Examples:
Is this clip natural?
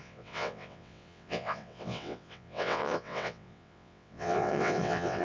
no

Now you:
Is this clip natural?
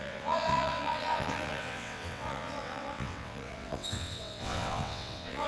no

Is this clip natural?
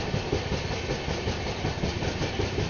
yes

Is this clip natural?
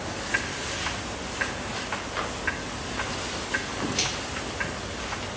yes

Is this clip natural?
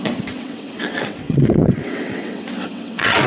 no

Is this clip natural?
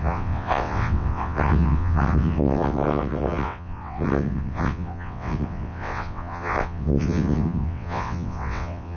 no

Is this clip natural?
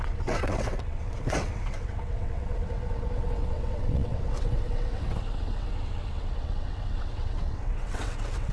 no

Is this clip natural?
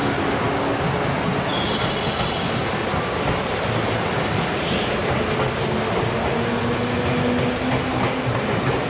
yes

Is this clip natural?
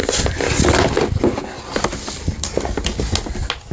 yes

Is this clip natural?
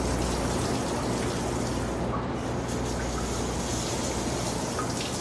yes